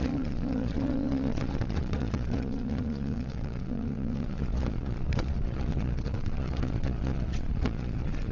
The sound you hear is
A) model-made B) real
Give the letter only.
A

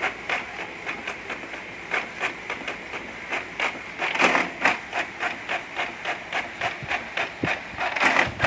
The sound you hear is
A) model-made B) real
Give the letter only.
B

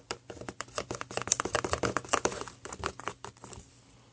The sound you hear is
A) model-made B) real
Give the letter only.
A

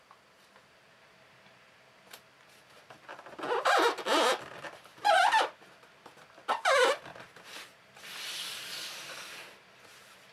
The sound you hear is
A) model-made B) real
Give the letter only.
B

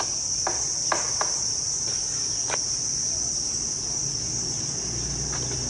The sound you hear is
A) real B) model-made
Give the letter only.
A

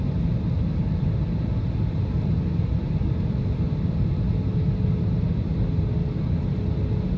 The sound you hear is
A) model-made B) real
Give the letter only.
B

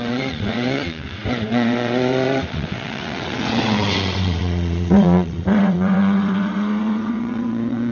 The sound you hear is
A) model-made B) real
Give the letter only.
A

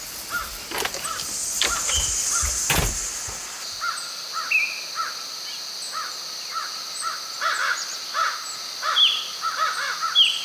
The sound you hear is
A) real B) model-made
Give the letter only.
A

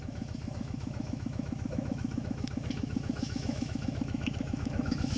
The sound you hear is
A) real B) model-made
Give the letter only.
B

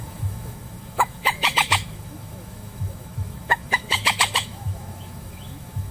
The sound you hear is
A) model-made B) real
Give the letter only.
A